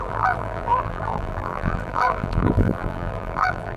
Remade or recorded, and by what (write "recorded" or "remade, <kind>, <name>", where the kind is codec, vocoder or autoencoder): remade, vocoder, BigVGAN v2